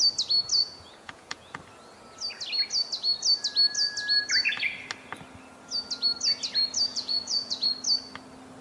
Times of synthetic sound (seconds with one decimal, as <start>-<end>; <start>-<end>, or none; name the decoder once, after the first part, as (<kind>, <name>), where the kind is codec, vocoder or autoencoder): 0.6-1.6 (vocoder, Vocos); 6.9-7.7